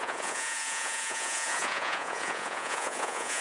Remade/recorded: remade